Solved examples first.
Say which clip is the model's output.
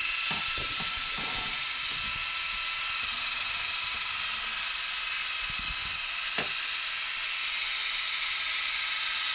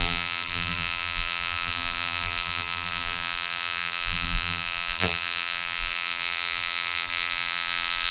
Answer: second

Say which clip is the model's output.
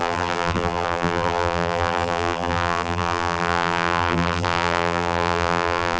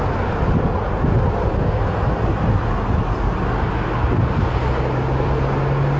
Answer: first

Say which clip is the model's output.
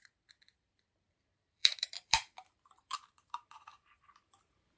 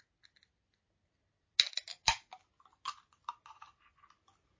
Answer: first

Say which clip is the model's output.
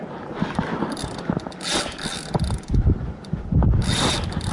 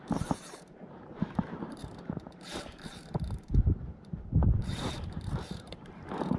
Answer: second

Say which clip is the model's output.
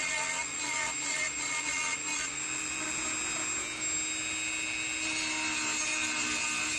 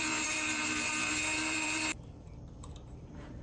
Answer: second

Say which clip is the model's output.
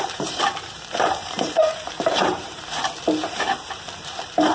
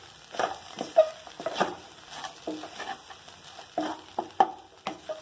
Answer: first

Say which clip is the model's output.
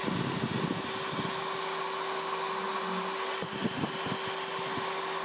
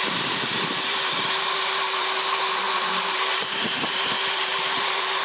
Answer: second